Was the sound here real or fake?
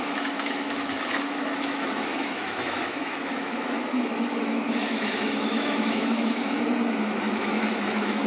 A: fake